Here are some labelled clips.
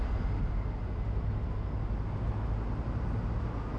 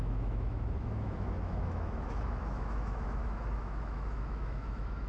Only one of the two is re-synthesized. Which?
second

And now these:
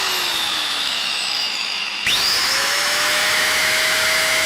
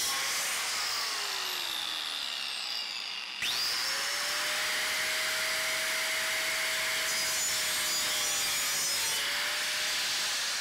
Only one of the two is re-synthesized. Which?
first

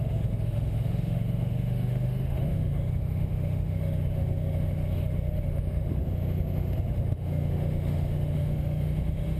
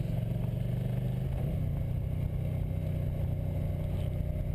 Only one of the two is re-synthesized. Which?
first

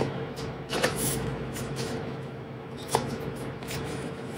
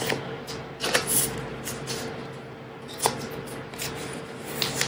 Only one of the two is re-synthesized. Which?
first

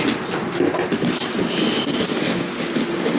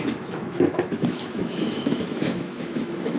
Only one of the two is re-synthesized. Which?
second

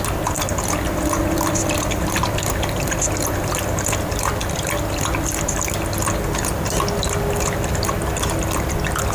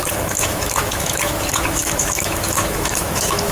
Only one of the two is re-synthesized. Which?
second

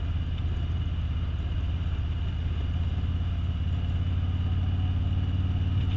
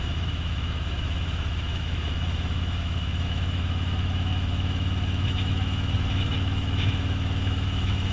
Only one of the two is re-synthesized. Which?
second